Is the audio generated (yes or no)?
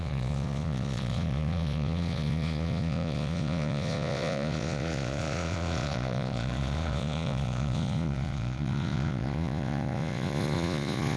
yes